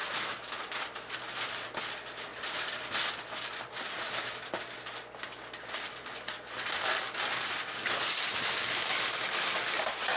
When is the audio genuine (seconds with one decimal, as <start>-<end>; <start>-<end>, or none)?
0.0-10.2